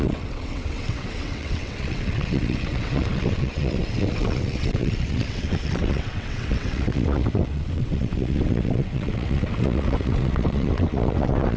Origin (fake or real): fake